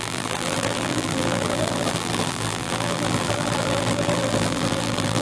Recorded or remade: remade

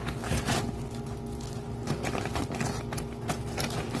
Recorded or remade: recorded